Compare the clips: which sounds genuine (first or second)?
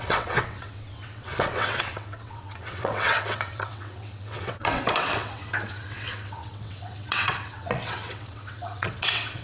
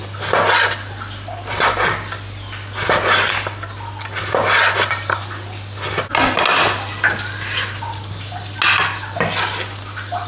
second